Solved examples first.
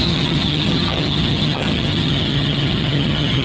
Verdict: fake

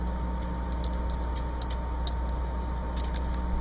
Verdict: real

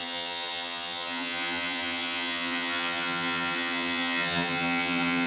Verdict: fake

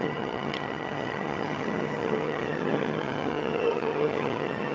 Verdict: fake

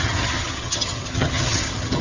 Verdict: fake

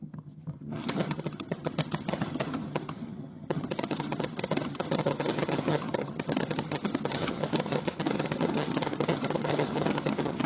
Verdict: fake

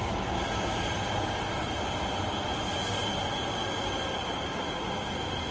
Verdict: real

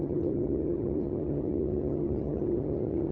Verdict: fake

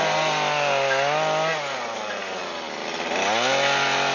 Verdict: real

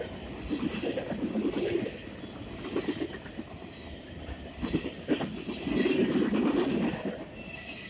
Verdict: real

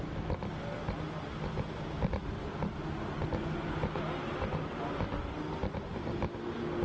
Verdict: real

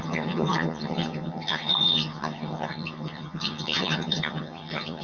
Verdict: fake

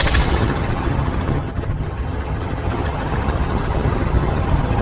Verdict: fake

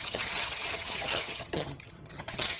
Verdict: fake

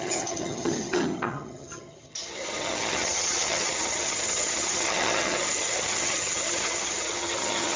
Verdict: fake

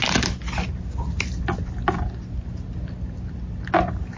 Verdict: real